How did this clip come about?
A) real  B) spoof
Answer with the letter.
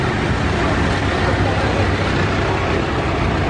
A